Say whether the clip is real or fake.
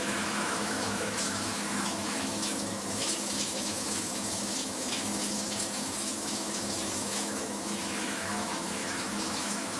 fake